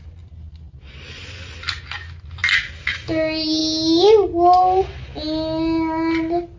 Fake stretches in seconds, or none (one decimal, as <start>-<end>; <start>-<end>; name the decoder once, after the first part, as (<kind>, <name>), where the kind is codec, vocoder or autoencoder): none